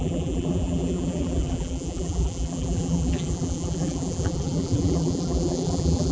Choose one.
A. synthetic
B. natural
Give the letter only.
A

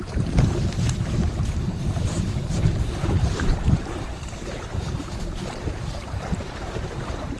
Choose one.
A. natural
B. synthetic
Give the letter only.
B